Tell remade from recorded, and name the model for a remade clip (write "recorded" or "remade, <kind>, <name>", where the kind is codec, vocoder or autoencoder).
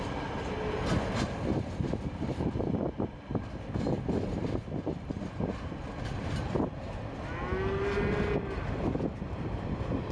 recorded